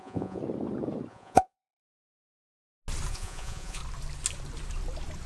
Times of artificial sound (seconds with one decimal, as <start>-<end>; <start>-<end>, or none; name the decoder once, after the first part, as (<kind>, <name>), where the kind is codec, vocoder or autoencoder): 0.0-0.4 (vocoder, Vocos); 1.1-2.4; 3.1-3.8